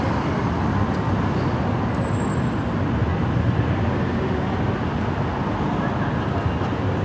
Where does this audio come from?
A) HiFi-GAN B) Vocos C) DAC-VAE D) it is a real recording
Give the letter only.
D